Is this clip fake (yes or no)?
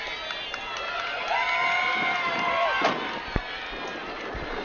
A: no